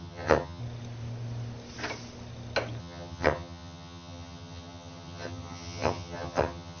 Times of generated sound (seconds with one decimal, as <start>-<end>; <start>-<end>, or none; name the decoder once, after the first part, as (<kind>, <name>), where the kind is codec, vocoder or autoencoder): 0.0-0.6 (vocoder, HiFi-GAN); 2.8-6.8